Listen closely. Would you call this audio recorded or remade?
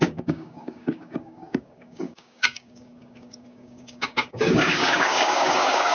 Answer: remade